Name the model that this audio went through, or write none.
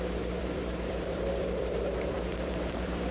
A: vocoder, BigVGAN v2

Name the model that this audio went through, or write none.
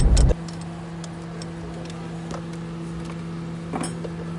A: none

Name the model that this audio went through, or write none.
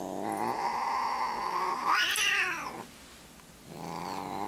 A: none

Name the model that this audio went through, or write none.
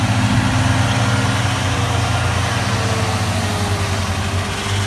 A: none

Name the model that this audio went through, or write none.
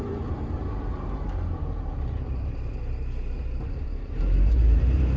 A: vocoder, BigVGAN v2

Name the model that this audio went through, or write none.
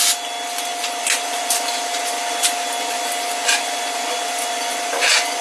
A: none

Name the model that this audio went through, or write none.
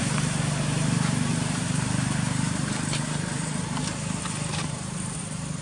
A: vocoder, BigVGAN v2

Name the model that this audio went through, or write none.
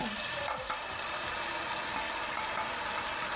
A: none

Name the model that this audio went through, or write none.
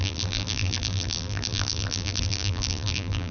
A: vocoder, BigVGAN v2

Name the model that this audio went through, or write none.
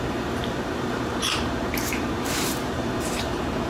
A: vocoder, BigVGAN v2